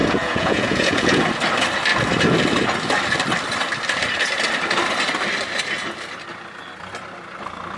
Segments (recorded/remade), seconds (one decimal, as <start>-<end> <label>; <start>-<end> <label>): 0.0-1.2 remade; 1.2-7.8 recorded